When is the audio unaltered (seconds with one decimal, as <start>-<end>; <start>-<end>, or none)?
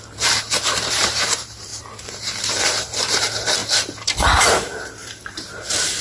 3.6-4.4